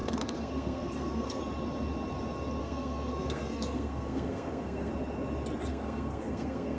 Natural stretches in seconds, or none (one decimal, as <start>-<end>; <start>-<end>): 1.4-2.6; 4.9-5.7